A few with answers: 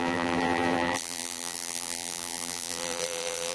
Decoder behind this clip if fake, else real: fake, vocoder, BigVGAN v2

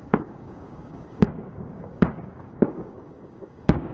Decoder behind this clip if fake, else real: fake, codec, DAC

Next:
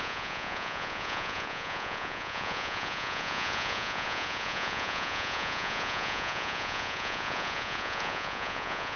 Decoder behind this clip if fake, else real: fake, vocoder, Vocos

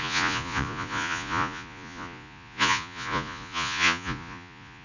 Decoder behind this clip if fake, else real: fake, vocoder, Vocos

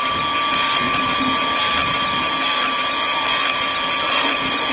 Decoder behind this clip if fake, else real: real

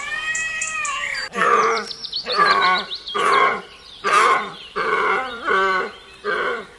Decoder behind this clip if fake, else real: fake, vocoder, BigVGAN v2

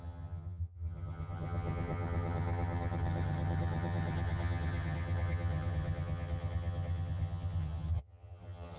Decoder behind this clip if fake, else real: fake, vocoder, HiFi-GAN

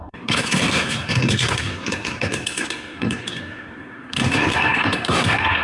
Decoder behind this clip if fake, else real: fake, codec, SNAC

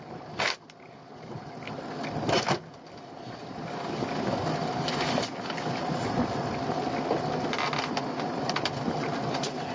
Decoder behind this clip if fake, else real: real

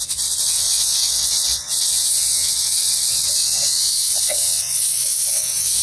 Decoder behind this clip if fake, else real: fake, vocoder, WaveNeXt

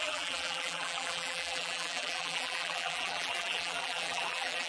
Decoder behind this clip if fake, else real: fake, vocoder, BigVGAN v2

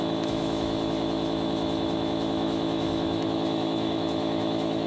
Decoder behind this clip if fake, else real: fake, autoencoder, DAC-VAE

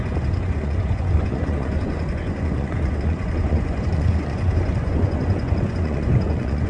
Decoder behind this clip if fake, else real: fake, vocoder, Vocos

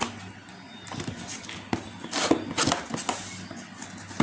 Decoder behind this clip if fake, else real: real